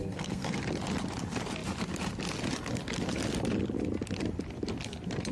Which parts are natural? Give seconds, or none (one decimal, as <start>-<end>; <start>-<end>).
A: 0.6-5.3